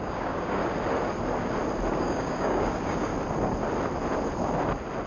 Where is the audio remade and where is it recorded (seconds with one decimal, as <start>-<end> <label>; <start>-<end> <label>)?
0.0-0.6 remade; 0.6-1.9 recorded; 1.9-3.1 remade; 3.1-5.1 recorded